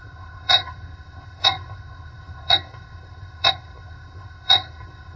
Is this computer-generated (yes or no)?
yes